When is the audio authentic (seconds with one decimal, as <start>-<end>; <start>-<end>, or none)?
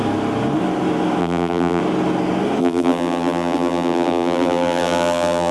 0.0-1.2; 1.8-2.6